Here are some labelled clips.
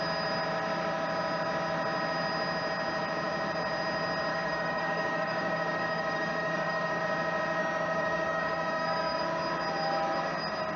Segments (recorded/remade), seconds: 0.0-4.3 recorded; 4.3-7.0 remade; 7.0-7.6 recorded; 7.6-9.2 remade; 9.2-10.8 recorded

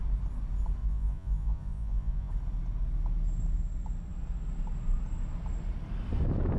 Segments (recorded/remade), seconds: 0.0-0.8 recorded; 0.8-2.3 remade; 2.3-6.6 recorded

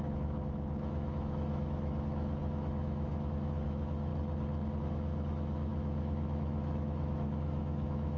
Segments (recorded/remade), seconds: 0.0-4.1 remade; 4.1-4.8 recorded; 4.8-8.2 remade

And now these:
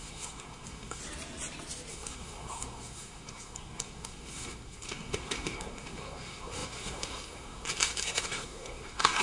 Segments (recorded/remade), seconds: 0.0-1.0 remade; 1.0-1.9 recorded; 1.9-9.2 remade

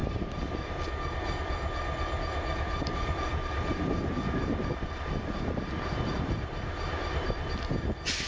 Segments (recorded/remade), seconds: 0.0-0.8 remade; 0.8-2.5 recorded; 2.5-7.5 remade; 7.5-8.3 recorded